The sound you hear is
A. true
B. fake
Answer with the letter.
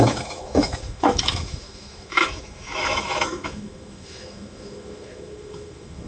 B